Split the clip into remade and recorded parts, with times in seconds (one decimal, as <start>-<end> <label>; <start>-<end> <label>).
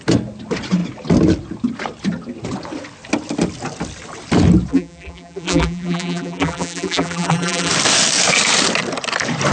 0.0-4.7 recorded; 4.7-7.7 remade; 7.7-9.5 recorded